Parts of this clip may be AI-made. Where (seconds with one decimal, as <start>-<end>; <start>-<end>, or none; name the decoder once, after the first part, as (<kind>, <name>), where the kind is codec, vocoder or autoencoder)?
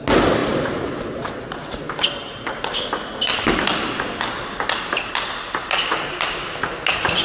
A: 0.4-2.9 (vocoder, BigVGAN v2)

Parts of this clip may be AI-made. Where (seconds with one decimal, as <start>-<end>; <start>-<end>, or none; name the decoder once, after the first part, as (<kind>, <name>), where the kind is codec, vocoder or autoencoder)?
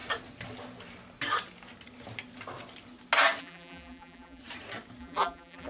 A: 3.4-4.4 (vocoder, BigVGAN v2); 5.0-5.7